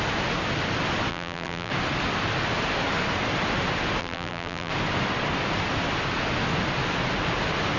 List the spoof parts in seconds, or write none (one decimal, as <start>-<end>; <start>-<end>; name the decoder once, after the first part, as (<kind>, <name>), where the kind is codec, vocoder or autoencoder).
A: 1.1-1.7 (vocoder, BigVGAN v2); 4.0-4.7